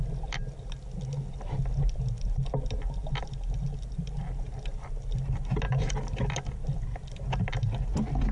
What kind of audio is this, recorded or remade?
recorded